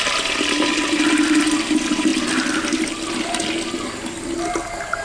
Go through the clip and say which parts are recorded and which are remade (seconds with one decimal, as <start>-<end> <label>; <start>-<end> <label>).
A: 0.0-5.0 recorded

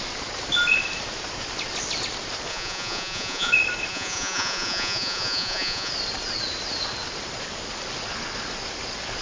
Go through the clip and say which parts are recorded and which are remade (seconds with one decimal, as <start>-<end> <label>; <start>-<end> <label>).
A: 0.0-2.5 recorded; 2.5-3.5 remade; 3.5-3.9 recorded; 3.9-5.9 remade; 5.9-9.2 recorded

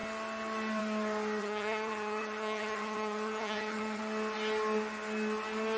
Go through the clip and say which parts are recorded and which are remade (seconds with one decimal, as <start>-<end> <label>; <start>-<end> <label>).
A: 0.0-1.4 recorded; 1.4-4.0 remade; 4.0-5.8 recorded